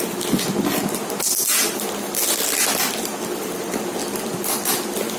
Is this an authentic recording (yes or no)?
yes